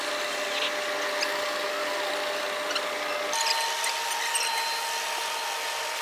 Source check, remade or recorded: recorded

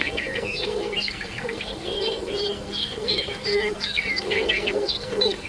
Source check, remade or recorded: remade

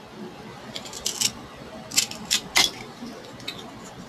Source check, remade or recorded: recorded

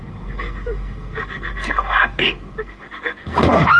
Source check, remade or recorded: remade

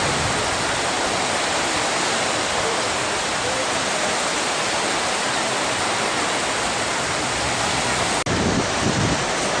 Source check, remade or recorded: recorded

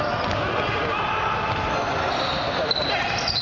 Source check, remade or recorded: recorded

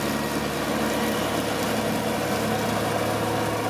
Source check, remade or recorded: recorded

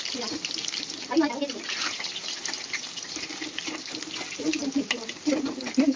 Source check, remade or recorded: recorded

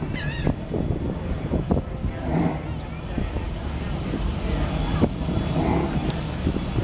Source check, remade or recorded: recorded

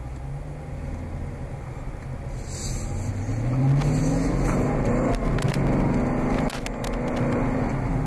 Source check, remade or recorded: recorded